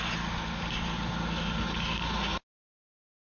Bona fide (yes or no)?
yes